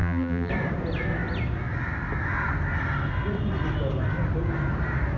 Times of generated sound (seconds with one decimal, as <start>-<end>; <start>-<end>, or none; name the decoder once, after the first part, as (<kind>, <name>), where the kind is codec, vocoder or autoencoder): 0.0-0.5 (vocoder, BigVGAN v2)